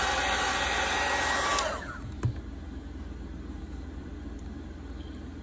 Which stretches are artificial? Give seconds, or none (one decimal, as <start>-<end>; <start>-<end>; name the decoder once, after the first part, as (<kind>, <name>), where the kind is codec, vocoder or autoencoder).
none